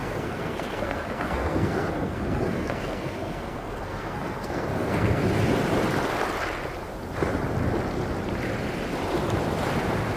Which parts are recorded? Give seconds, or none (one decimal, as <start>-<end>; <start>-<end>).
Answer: 5.2-10.2